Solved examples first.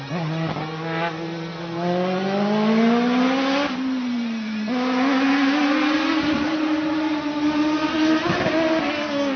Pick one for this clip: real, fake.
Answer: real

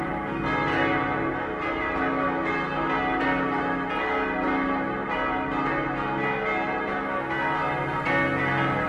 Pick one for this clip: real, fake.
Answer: real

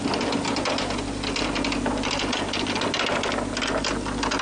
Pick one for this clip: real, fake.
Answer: real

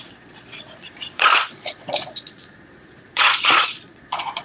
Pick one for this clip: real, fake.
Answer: fake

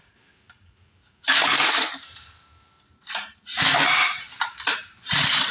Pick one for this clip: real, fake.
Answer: fake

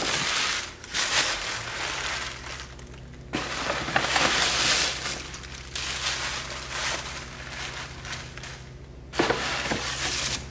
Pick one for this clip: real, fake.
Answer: real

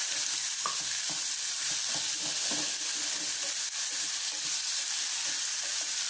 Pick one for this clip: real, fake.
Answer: real